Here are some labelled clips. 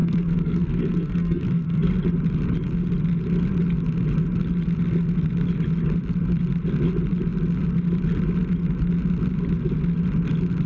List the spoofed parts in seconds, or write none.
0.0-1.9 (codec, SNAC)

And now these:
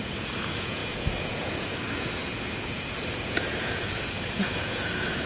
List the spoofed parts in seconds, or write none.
0.0-5.3 (vocoder, Vocos)

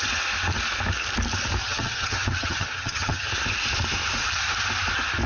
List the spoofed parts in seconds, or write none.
1.6-3.3 (vocoder, HiFi-GAN)